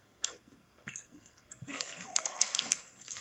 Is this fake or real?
fake